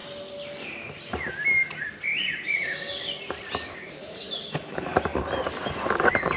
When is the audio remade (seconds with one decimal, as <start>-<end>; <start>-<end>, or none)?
none